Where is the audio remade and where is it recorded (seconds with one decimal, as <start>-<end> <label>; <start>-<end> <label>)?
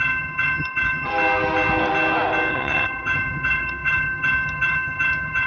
0.0-1.1 remade; 1.1-2.5 recorded; 2.5-5.5 remade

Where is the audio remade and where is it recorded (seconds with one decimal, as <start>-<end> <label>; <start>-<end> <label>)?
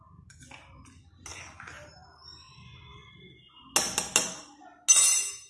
0.0-5.5 recorded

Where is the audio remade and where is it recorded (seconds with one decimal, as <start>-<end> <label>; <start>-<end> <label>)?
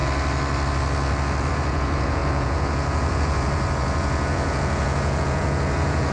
0.0-1.5 recorded; 1.5-6.1 remade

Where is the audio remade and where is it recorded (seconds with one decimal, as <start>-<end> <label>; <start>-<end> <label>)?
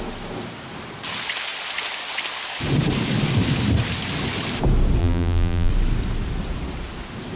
0.0-5.0 recorded; 5.0-5.7 remade; 5.7-7.4 recorded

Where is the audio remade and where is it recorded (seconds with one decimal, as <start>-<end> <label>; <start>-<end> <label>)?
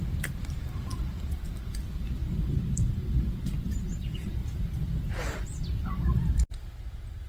0.0-0.9 remade; 0.9-2.4 recorded; 2.4-4.4 remade; 4.4-6.0 recorded; 6.0-7.3 remade